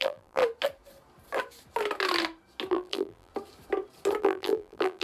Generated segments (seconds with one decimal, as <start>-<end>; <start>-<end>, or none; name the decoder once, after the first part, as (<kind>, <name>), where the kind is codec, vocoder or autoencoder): 0.0-0.4 (vocoder, BigVGAN v2); 2.7-3.3; 4.2-5.0

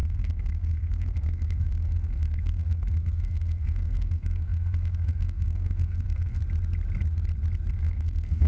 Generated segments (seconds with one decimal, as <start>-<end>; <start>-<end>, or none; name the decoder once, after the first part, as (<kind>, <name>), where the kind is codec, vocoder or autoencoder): 0.0-6.4 (codec, SNAC); 7.8-8.5

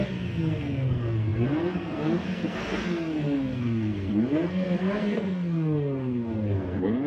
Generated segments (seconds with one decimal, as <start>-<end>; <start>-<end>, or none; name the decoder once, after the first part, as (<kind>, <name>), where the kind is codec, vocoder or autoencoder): 0.0-7.1 (codec, SNAC)

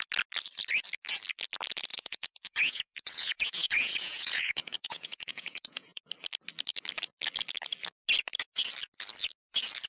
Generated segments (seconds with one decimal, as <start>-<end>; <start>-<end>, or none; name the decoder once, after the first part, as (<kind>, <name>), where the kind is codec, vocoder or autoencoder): 1.9-6.0 (vocoder, Vocos)